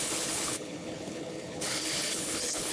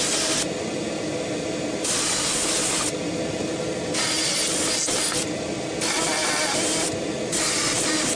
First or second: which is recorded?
second